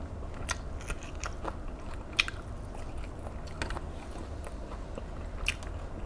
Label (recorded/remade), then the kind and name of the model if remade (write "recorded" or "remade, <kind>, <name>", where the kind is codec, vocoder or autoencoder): recorded